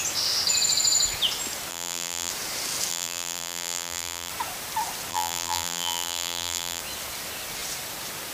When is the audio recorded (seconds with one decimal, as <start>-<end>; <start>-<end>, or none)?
0.0-1.7; 2.3-2.9; 4.3-5.1; 6.8-8.3